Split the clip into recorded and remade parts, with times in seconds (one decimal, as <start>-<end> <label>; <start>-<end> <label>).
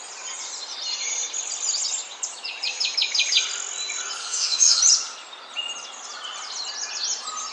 0.0-4.2 recorded; 4.2-4.8 remade; 4.8-7.5 recorded